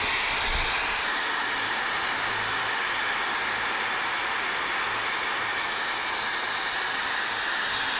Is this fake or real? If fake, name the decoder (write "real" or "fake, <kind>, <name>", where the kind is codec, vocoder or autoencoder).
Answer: real